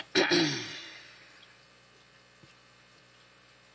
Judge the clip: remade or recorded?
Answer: recorded